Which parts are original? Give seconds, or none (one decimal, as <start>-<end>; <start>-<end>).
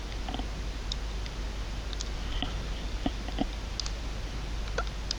0.0-5.2